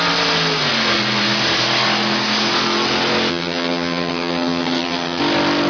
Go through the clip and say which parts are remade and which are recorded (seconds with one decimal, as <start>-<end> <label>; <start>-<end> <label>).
0.0-3.3 recorded; 3.3-5.2 remade; 5.2-5.7 recorded